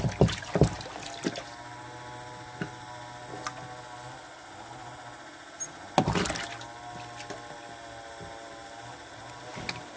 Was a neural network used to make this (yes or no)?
no